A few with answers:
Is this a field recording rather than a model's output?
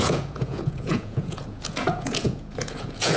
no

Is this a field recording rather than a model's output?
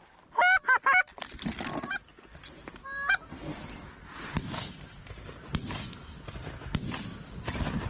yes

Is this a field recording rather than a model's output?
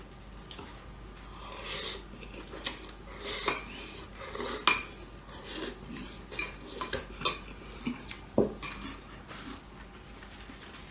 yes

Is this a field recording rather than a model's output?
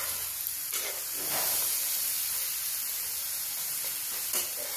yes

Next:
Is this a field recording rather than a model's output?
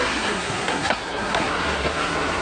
no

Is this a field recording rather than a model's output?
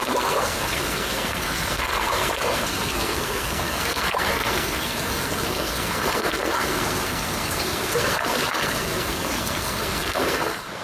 no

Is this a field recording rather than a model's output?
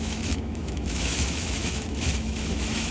no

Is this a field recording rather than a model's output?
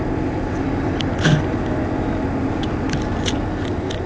yes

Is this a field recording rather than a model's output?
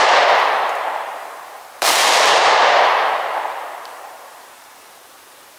no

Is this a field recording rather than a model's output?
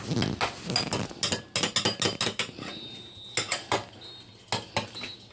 yes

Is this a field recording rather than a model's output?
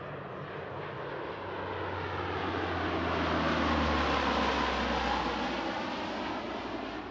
yes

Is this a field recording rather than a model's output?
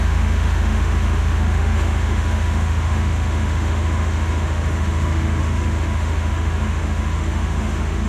no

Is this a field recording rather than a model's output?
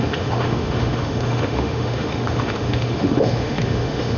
no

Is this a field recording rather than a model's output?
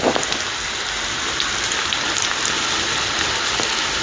yes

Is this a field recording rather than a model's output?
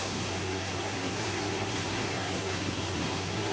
no